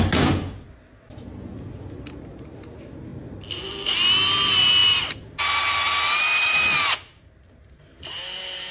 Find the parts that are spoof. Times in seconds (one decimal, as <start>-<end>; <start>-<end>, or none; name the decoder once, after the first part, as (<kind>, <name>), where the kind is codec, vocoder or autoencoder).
none

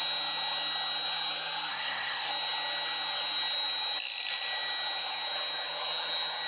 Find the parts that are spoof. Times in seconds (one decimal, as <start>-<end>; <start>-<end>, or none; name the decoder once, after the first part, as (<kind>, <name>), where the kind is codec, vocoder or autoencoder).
1.7-2.3 (codec, SNAC)

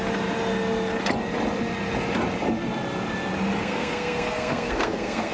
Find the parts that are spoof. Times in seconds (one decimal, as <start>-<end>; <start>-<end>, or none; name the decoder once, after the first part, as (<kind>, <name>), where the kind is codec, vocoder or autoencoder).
3.6-5.3 (codec, SNAC)

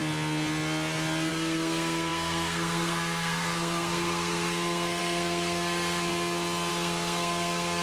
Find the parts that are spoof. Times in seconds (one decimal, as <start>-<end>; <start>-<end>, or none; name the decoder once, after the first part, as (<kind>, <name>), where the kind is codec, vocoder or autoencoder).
1.3-6.1 (codec, SNAC); 6.7-7.8

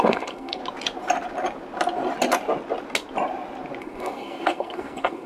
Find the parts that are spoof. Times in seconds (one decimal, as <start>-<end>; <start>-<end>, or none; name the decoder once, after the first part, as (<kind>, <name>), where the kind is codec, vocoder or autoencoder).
0.0-0.6 (codec, SNAC); 3.8-5.3

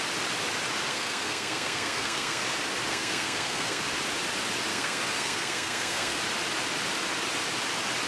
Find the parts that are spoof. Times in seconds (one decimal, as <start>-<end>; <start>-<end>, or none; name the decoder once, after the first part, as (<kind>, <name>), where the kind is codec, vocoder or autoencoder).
0.9-2.4 (codec, SNAC); 2.9-3.8; 4.7-6.2

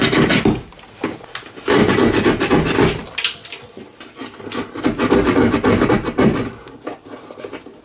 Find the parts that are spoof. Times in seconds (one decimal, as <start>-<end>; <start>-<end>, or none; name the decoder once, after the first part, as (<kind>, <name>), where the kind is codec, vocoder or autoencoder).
none

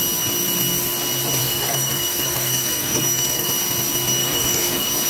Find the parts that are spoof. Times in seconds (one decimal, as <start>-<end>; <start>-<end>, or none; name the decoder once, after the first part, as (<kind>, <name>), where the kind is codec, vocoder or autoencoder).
1.4-3.5 (codec, SNAC); 4.2-5.1